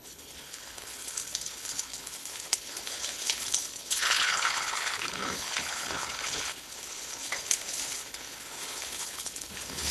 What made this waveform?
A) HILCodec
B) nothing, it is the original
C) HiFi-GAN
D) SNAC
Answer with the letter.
A